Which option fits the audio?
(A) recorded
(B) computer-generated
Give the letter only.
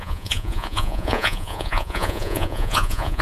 B